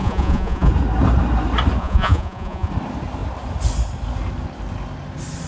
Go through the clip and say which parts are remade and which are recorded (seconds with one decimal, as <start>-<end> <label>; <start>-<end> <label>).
0.0-0.7 remade; 0.7-1.8 recorded; 1.8-2.7 remade; 2.7-5.5 recorded